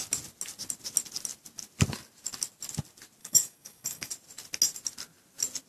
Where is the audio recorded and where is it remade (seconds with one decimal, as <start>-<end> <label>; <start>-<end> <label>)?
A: 0.0-3.2 recorded; 3.2-4.1 remade; 4.1-5.7 recorded